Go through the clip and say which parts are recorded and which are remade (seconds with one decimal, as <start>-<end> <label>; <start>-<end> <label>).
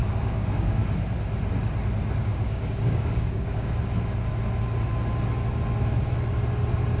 0.0-0.8 remade; 0.8-2.3 recorded; 2.3-3.8 remade; 3.8-7.0 recorded